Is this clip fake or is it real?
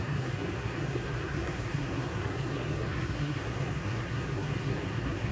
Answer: fake